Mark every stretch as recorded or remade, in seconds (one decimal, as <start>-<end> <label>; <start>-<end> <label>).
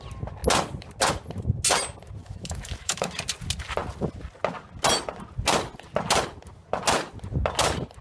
0.0-2.2 recorded; 2.2-3.1 remade; 3.1-8.0 recorded